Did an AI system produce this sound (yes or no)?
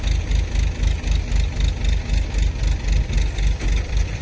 no